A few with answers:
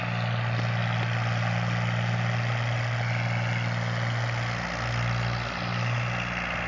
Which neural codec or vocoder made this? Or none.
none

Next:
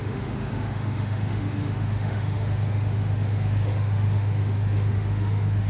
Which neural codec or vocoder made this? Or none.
autoencoder, DAC-VAE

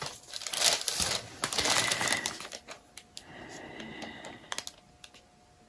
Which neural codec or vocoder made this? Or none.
none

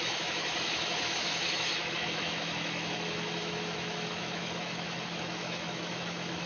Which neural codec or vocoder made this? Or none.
autoencoder, DAC-VAE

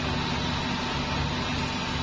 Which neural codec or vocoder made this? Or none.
none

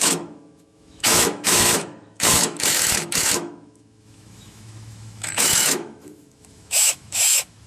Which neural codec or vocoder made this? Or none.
autoencoder, DAC-VAE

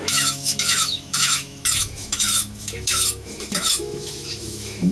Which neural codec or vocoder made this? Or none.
autoencoder, DAC-VAE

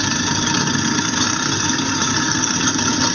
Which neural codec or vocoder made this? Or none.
none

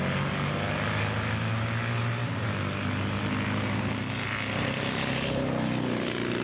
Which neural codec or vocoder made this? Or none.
none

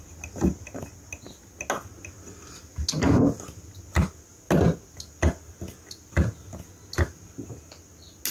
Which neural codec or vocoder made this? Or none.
none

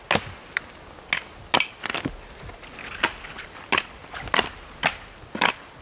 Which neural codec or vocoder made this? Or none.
none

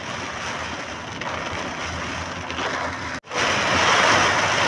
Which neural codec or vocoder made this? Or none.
none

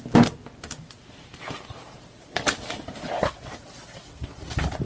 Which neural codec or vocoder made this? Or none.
none